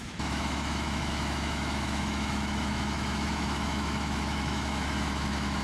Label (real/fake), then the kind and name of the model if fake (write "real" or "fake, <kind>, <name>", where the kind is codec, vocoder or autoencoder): fake, autoencoder, DAC-VAE